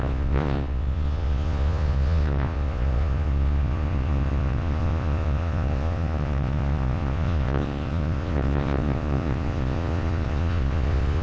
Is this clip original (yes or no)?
no